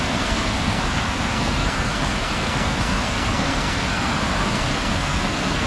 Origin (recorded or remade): remade